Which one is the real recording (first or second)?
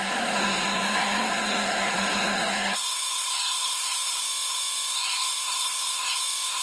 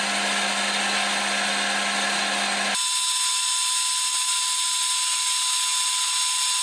second